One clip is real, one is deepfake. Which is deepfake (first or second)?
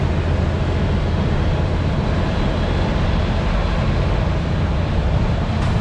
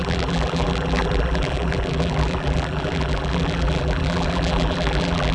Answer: second